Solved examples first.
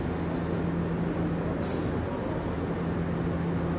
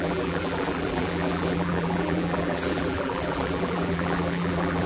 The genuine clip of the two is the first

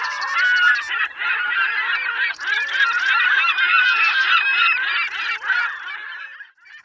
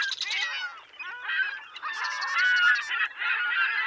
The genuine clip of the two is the second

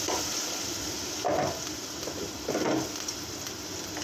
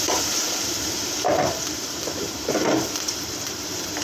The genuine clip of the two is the first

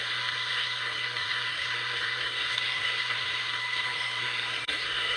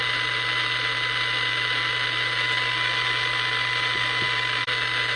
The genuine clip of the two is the second